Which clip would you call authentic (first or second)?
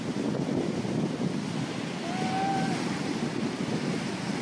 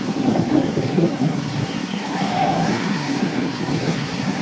first